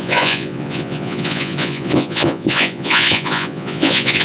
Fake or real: fake